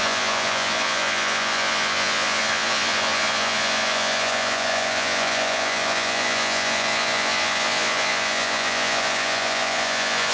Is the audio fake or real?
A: fake